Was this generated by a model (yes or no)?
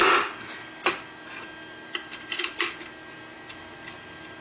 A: no